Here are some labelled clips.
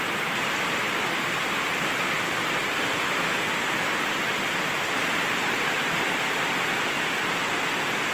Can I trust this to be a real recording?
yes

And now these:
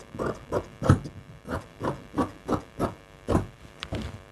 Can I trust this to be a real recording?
yes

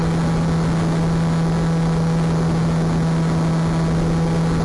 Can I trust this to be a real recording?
yes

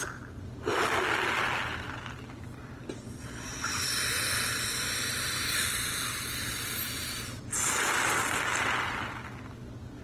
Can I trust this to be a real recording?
yes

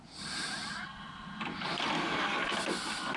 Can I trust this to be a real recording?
yes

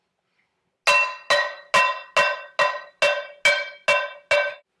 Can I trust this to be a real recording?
yes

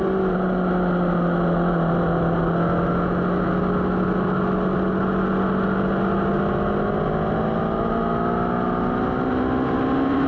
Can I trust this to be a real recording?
yes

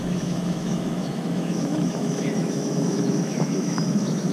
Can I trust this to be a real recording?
no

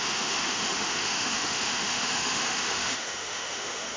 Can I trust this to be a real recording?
no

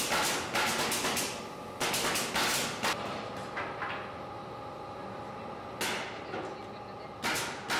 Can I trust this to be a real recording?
yes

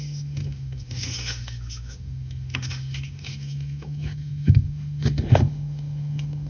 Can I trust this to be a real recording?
no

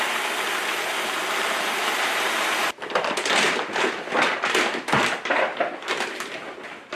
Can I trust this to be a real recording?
yes